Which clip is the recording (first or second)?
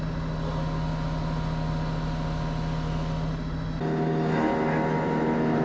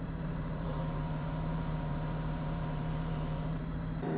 first